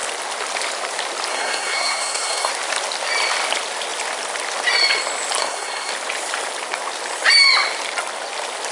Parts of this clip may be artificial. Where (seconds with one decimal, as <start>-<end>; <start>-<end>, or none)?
1.3-2.5; 5.4-5.9